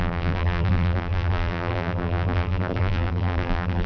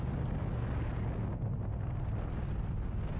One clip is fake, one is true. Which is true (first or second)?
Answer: second